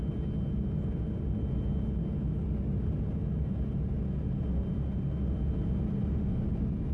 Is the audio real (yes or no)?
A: yes